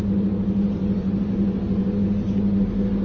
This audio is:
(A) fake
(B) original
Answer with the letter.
B